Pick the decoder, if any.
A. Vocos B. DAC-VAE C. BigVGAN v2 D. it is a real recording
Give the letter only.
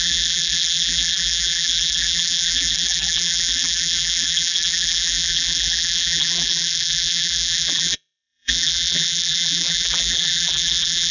C